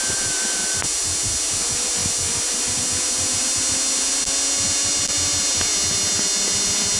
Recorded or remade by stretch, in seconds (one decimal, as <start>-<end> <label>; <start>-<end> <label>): 0.0-7.0 recorded